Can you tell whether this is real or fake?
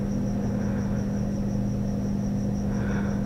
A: real